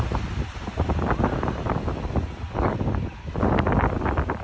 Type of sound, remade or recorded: recorded